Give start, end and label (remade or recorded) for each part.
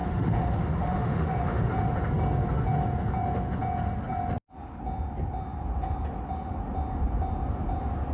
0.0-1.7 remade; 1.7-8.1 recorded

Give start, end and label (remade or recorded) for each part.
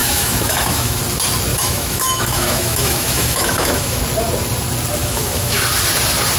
0.0-1.0 remade; 1.0-1.5 recorded; 1.5-4.0 remade; 4.0-5.0 recorded; 5.0-5.6 remade; 5.6-6.4 recorded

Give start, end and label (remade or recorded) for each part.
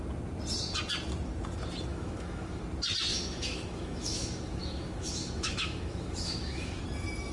0.0-1.9 recorded; 1.9-2.6 remade; 2.6-3.1 recorded; 3.1-6.8 remade; 6.8-7.3 recorded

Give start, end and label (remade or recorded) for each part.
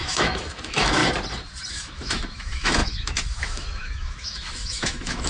0.0-1.0 remade; 1.0-1.7 recorded; 1.7-5.3 remade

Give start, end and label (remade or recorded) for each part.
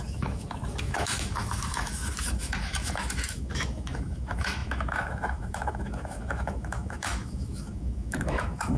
0.0-8.8 remade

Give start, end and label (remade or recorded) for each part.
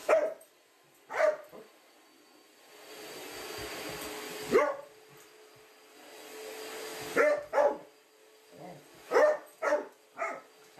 0.0-10.8 recorded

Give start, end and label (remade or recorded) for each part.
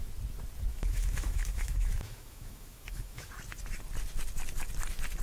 0.0-0.7 recorded; 0.7-3.3 remade; 3.3-5.2 recorded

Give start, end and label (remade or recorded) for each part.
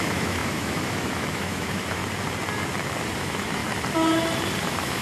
0.0-2.0 remade; 2.0-3.2 recorded; 3.2-3.6 remade; 3.6-4.6 recorded; 4.6-5.0 remade